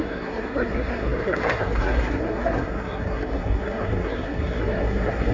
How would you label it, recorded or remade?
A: remade